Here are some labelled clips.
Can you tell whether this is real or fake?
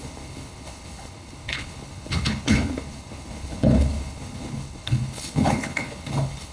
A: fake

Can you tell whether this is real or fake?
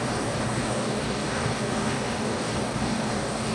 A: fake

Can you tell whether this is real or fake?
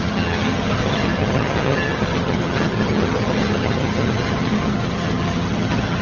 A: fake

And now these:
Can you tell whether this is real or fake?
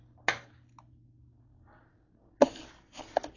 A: real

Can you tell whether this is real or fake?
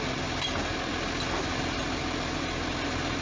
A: real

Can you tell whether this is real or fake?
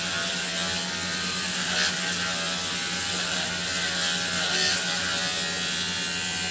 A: real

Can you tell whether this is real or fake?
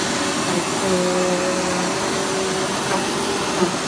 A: real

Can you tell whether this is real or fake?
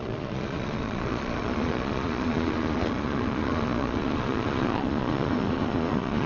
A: fake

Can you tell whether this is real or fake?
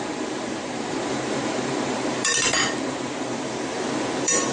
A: fake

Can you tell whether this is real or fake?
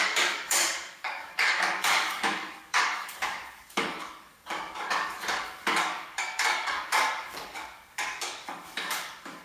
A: fake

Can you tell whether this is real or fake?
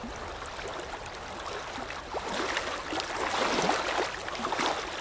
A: real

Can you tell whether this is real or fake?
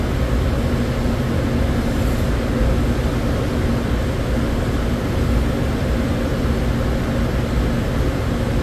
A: real